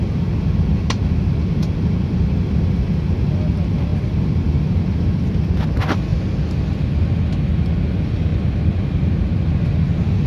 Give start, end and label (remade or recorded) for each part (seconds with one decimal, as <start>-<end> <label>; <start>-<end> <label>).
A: 0.0-10.3 recorded